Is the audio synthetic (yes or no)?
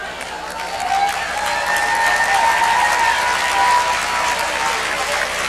no